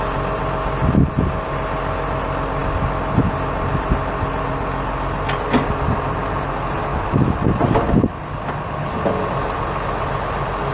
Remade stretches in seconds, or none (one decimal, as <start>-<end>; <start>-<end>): none